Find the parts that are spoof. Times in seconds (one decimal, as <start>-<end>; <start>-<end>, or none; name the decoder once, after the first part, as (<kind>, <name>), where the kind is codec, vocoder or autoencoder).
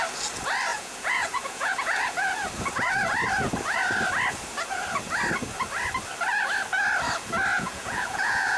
0.7-2.3 (vocoder, Vocos); 7.5-8.6